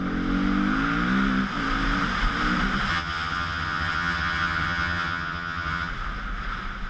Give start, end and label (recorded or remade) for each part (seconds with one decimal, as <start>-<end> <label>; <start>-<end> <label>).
0.0-2.9 recorded; 2.9-5.9 remade; 5.9-6.9 recorded